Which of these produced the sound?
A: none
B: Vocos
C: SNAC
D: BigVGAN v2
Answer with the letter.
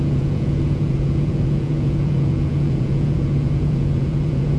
B